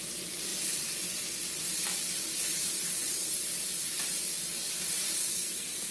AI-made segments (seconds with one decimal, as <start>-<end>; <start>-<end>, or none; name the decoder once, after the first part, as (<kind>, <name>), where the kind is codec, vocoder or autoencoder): 5.3-5.9 (codec, SNAC)